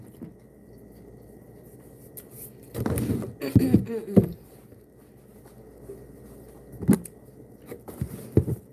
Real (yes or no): yes